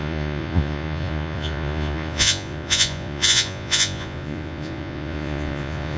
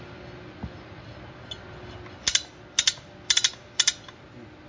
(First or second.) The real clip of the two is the second